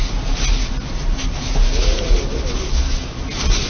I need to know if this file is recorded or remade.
recorded